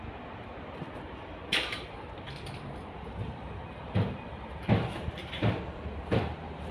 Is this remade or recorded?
remade